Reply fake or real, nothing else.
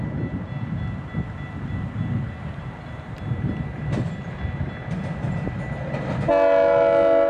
real